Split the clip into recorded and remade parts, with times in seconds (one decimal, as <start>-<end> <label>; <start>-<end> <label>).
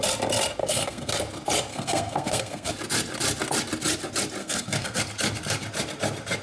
0.0-0.6 recorded; 0.6-1.1 remade; 1.1-1.7 recorded; 1.7-2.7 remade; 2.7-4.4 recorded; 4.4-5.0 remade; 5.0-6.4 recorded